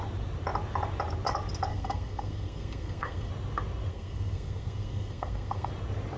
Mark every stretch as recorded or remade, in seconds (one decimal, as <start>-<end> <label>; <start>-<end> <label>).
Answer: 0.0-1.7 recorded; 1.7-3.3 remade; 3.3-3.9 recorded; 3.9-5.7 remade; 5.7-6.2 recorded